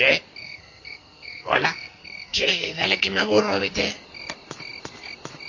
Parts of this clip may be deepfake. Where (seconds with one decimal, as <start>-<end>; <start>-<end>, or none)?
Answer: 0.4-3.7